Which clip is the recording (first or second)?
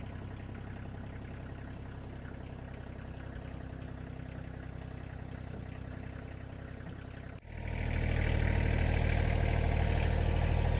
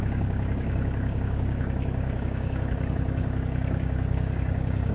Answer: first